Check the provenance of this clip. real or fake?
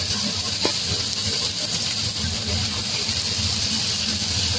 real